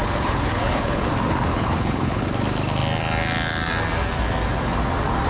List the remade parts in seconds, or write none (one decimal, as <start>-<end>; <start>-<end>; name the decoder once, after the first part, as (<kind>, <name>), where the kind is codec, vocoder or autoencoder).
0.0-1.1 (codec, HILCodec); 1.5-2.2